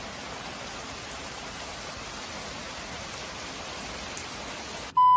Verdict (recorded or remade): recorded